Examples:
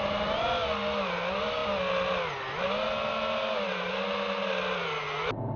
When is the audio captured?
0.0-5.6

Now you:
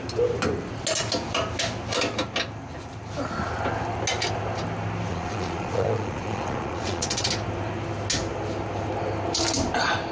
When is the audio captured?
0.0-5.1; 7.3-10.1

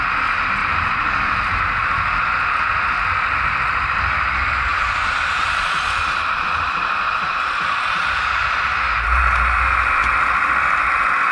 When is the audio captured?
0.0-0.6; 1.6-4.7; 9.9-11.3

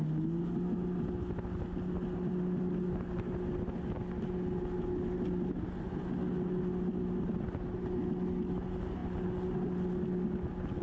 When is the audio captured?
0.0-10.8

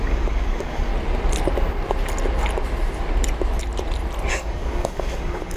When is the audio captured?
0.9-4.3

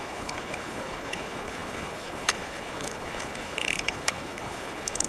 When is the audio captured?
none

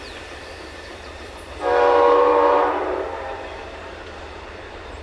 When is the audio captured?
none